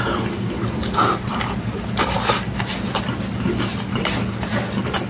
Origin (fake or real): real